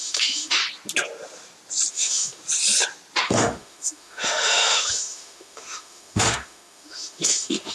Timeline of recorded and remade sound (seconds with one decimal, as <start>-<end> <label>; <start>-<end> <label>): 0.0-0.6 remade; 0.6-1.9 recorded; 1.9-2.4 remade; 2.4-3.2 recorded; 3.2-7.7 remade